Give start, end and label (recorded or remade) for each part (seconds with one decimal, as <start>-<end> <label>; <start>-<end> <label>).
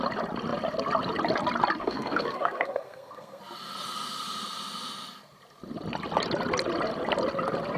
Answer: 0.0-1.8 recorded; 1.8-3.4 remade; 3.4-7.8 recorded